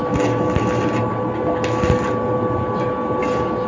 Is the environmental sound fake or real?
real